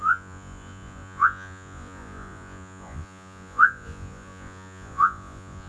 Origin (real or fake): fake